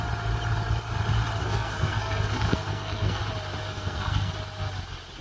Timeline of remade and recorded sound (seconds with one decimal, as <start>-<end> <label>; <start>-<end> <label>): 0.0-1.4 recorded; 1.4-3.2 remade; 3.2-3.6 recorded; 3.6-4.3 remade; 4.3-5.2 recorded

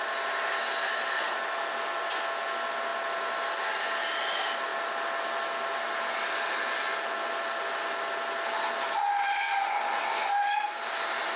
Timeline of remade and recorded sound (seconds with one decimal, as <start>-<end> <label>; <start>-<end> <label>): 0.0-11.4 recorded